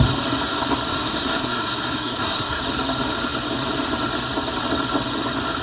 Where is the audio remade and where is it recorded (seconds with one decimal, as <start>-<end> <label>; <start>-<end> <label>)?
0.0-0.9 recorded; 0.9-2.6 remade; 2.6-5.6 recorded